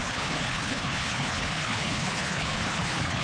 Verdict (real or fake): fake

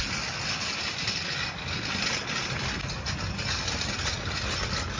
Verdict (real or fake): real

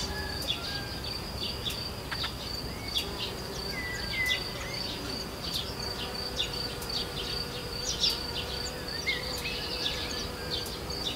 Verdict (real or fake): real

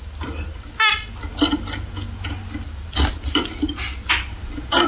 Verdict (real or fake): real